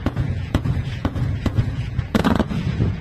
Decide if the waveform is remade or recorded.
remade